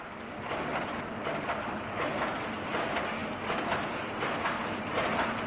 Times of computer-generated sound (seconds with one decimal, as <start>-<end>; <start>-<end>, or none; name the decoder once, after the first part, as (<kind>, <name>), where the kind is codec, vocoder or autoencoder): none